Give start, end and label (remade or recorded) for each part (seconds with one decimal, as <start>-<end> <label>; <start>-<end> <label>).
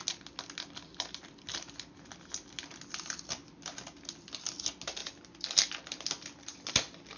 0.0-7.2 recorded